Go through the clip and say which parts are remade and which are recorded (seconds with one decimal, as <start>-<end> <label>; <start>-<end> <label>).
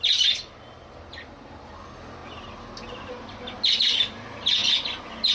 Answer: 0.0-5.3 recorded